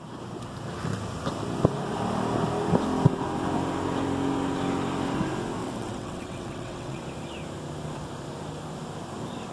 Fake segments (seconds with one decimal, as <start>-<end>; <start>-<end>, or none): 5.6-7.0